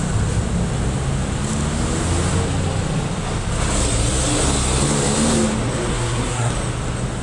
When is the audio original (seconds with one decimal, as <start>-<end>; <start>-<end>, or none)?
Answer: 0.0-5.9; 6.5-7.2